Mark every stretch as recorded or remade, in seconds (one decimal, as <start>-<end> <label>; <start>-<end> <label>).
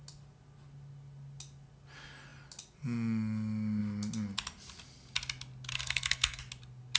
0.0-5.7 recorded; 5.7-6.4 remade; 6.4-7.0 recorded